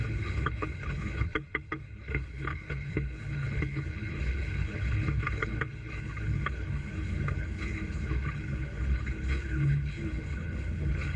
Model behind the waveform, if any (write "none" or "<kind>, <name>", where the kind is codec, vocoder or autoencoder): codec, HILCodec